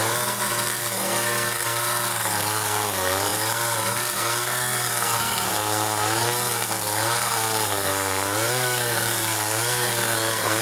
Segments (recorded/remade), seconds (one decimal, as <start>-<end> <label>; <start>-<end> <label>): 0.0-10.6 remade